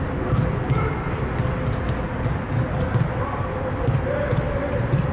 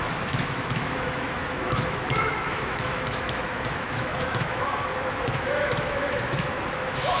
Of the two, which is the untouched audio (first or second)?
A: first